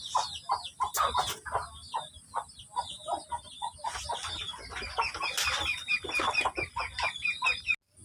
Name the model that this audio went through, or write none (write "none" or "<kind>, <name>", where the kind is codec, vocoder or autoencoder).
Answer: none